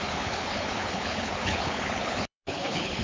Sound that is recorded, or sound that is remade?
remade